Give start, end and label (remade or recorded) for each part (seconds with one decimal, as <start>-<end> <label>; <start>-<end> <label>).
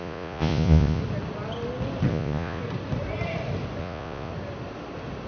0.0-1.0 remade; 1.0-2.1 recorded; 2.1-2.6 remade; 2.6-3.8 recorded; 3.8-4.3 remade; 4.3-5.3 recorded